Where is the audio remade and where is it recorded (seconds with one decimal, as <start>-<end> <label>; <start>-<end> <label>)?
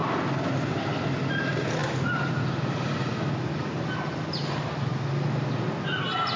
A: 0.0-6.4 recorded